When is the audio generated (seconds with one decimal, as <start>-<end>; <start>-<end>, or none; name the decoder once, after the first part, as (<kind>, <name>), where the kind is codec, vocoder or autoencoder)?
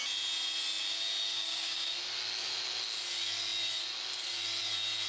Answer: 1.3-1.9 (codec, DAC)